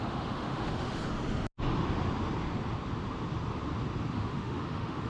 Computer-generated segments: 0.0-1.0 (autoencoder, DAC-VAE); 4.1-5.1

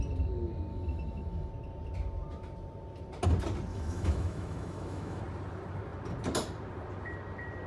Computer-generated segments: 0.7-1.5 (autoencoder, DAC-VAE); 3.7-5.2

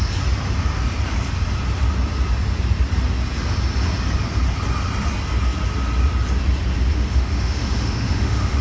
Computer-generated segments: 6.9-8.6 (autoencoder, DAC-VAE)